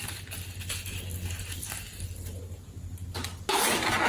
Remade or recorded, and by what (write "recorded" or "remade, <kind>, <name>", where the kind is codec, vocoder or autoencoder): recorded